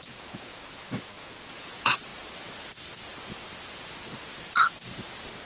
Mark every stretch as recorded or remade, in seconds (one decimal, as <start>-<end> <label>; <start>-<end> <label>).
0.0-2.1 remade; 2.1-5.5 recorded